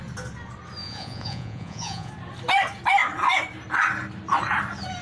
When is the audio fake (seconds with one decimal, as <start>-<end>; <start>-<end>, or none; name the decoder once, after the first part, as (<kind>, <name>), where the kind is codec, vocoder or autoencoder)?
0.8-2.1 (vocoder, Vocos)